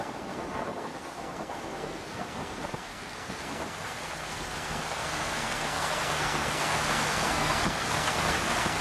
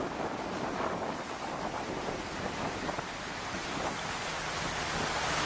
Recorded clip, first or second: second